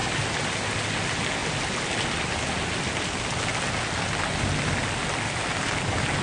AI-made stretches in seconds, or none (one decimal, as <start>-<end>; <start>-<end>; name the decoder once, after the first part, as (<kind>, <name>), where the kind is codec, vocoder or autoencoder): none